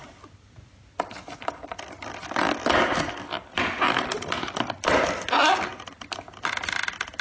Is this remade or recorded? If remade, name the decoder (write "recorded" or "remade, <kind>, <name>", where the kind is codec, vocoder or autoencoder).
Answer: recorded